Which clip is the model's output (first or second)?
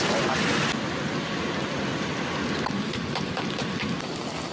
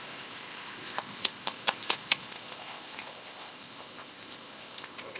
second